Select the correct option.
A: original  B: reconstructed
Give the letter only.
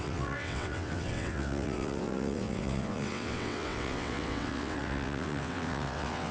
B